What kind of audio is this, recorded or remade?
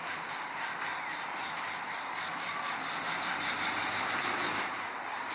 remade